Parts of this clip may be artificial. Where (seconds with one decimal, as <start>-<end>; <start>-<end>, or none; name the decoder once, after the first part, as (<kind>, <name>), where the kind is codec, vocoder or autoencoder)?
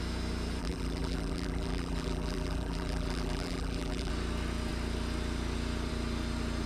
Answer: 0.6-4.1 (vocoder, BigVGAN v2)